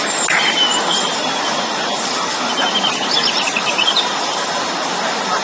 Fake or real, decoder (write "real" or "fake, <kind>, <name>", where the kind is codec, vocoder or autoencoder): real